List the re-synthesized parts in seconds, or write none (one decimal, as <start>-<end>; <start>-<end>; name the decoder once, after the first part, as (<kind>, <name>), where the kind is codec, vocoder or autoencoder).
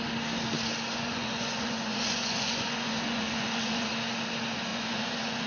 0.9-3.9 (vocoder, Vocos); 4.7-5.5